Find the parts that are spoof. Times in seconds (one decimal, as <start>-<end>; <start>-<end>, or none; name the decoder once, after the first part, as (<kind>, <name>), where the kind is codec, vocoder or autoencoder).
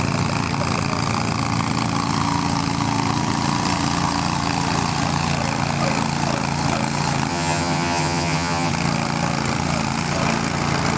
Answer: 7.3-8.7 (vocoder, HiFi-GAN)